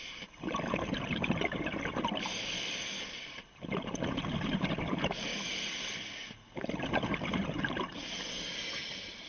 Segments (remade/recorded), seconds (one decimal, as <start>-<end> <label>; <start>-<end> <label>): 0.0-9.3 recorded